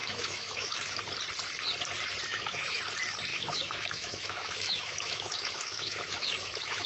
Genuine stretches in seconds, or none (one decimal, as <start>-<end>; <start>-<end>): 1.0-2.3; 2.8-3.3